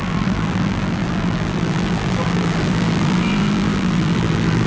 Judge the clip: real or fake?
fake